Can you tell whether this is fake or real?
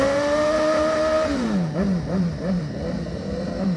fake